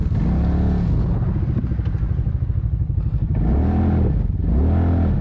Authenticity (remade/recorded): recorded